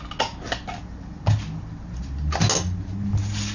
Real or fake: real